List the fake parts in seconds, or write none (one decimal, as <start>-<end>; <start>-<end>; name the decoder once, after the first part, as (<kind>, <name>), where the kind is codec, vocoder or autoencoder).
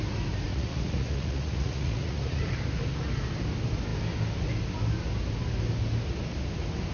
0.5-2.4 (vocoder, Vocos)